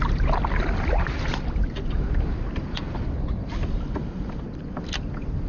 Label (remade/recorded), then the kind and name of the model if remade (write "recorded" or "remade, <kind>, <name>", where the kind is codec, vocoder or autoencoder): recorded